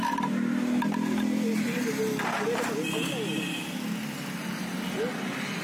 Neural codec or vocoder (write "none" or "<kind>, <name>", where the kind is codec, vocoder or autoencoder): none